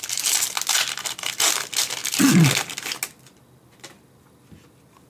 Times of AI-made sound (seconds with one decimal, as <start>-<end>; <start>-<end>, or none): none